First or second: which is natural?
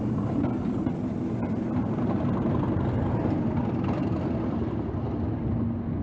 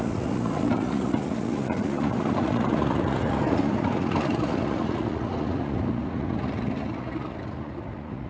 first